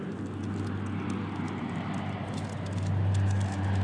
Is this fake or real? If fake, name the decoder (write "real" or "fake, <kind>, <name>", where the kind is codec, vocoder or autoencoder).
real